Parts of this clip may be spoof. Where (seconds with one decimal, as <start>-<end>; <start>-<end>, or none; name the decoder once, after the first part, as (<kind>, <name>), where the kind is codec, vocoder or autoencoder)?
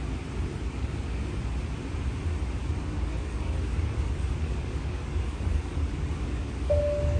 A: 0.5-1.4 (codec, DAC); 2.6-7.2